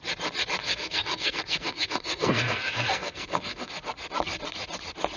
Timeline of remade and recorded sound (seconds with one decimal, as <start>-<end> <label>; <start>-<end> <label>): 0.0-0.6 recorded; 0.6-3.7 remade; 3.7-5.2 recorded